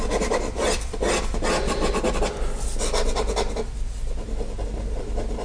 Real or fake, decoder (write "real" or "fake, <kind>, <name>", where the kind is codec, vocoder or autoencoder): real